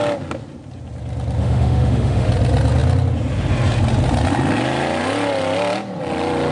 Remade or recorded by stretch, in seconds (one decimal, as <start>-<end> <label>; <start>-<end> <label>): 0.0-1.4 recorded; 1.4-2.3 remade; 2.3-6.5 recorded